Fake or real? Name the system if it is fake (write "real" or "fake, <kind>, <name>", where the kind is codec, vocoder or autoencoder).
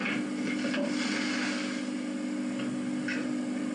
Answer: real